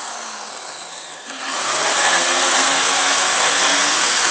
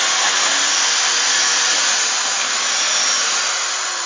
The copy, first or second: first